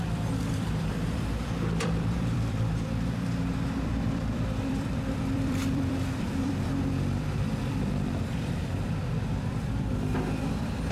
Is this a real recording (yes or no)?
no